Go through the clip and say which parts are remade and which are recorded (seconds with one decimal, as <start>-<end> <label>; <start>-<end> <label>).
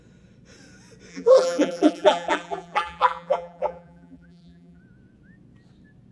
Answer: 0.0-1.1 recorded; 1.1-4.8 remade; 4.8-6.1 recorded